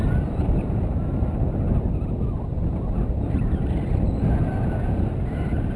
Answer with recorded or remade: recorded